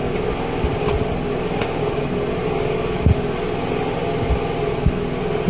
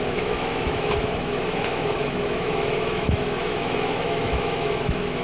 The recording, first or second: first